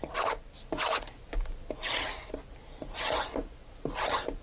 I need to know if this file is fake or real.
real